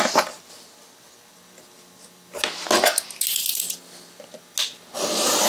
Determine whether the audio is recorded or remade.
recorded